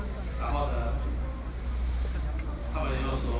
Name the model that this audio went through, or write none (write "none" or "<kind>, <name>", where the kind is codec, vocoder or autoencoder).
none